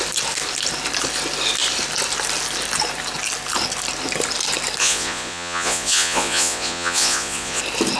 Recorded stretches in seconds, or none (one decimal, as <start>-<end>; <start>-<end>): 0.0-4.8; 7.6-8.0